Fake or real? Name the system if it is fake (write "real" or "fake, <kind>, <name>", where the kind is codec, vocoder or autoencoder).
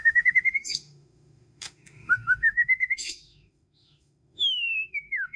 fake, autoencoder, DAC-VAE